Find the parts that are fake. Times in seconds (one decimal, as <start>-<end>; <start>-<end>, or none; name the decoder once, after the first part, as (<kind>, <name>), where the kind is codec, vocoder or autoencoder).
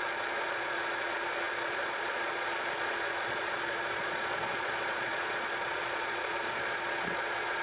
0.0-7.6 (vocoder, Vocos)